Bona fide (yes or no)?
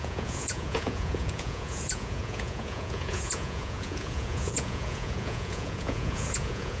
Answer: no